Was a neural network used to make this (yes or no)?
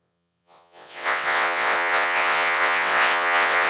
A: yes